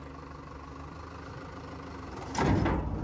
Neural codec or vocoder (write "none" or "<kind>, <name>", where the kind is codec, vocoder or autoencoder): none